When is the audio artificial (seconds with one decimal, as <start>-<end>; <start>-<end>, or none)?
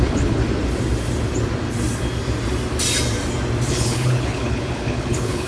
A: 0.0-0.4; 3.7-5.5